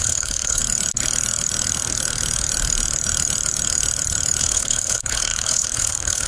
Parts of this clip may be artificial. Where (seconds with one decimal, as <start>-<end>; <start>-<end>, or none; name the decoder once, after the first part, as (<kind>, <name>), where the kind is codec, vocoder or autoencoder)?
0.0-0.6 (codec, HILCodec); 4.4-6.3